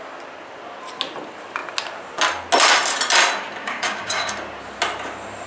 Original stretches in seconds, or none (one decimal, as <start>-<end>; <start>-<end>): 0.0-3.6; 4.3-5.5